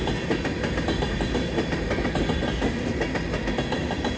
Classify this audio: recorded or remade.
recorded